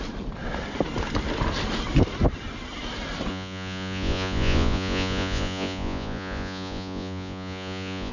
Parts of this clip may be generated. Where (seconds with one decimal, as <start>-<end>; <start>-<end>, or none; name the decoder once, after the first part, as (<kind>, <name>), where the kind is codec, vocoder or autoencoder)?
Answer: 3.3-8.1 (vocoder, Vocos)